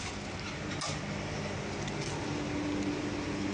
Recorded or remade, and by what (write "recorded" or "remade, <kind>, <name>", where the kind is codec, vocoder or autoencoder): recorded